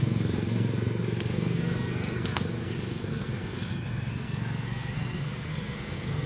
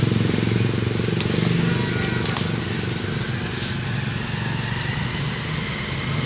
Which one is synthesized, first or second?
first